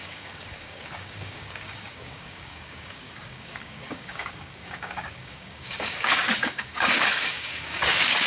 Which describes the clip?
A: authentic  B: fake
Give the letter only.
B